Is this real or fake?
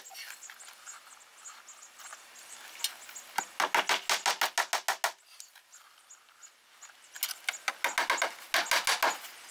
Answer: real